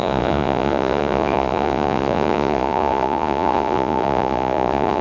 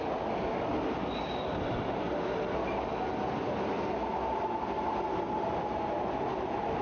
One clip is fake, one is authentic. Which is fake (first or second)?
first